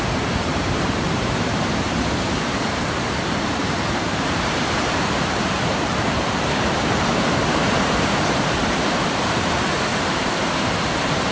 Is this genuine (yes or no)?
no